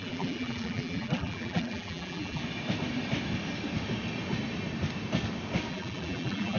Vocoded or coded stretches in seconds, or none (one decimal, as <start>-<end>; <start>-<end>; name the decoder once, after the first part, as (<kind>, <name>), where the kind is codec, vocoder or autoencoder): 0.0-2.4 (vocoder, BigVGAN v2); 5.7-6.6